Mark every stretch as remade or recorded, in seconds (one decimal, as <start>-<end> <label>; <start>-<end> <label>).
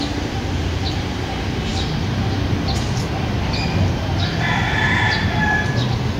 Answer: 0.0-6.2 recorded